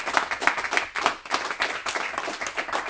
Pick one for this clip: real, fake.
real